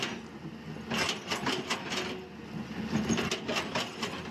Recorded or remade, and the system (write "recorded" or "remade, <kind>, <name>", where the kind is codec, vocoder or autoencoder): recorded